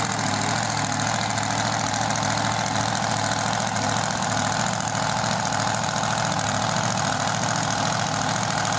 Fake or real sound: real